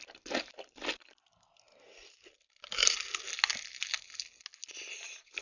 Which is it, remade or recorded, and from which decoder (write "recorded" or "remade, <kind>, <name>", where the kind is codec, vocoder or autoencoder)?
recorded